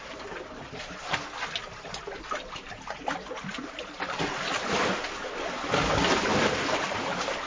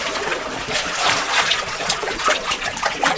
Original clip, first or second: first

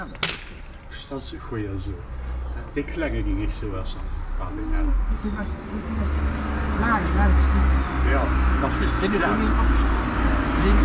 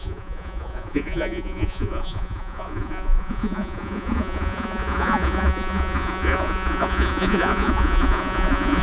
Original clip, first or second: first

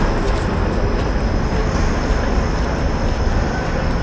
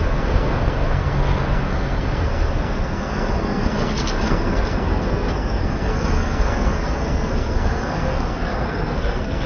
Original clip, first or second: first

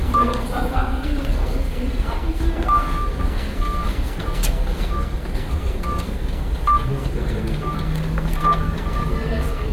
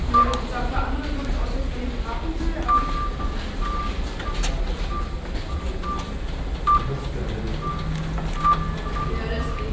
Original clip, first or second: second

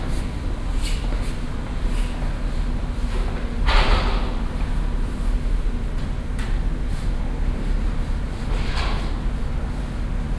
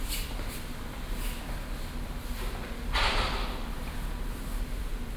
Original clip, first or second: first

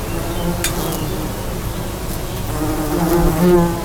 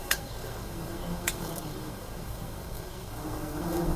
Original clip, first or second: first